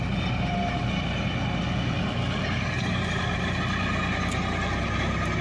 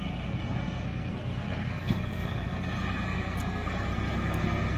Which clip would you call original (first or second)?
first